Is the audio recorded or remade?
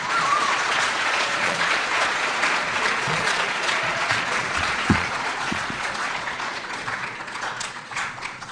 remade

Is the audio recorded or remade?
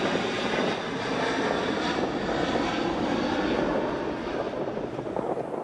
recorded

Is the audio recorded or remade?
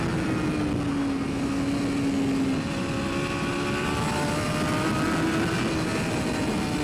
recorded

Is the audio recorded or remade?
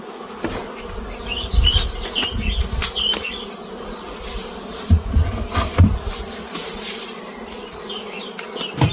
recorded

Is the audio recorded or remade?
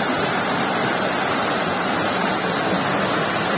recorded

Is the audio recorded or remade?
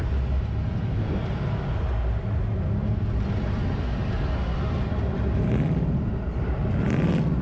recorded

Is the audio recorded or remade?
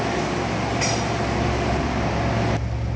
recorded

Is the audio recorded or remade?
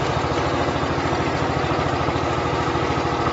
recorded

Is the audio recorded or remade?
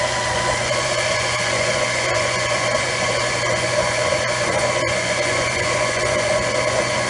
remade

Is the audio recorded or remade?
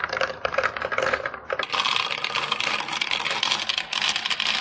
recorded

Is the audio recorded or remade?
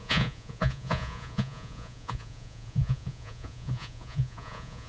remade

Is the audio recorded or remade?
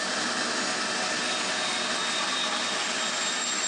recorded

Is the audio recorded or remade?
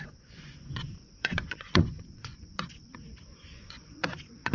remade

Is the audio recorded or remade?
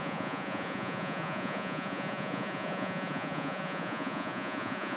remade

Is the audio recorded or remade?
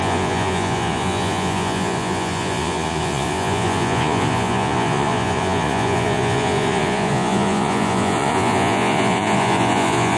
remade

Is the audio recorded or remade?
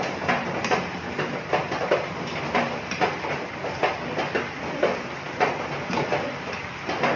recorded